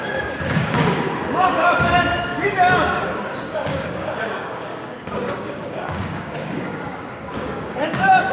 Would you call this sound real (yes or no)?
no